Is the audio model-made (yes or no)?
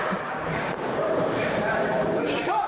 yes